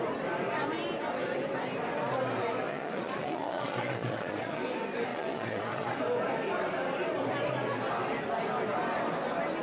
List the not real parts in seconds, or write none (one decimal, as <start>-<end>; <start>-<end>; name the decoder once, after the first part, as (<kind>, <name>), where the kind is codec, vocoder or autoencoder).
2.7-4.6 (vocoder, Vocos); 5.1-5.9